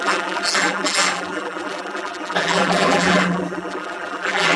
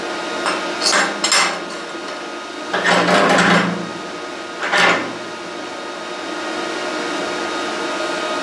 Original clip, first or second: second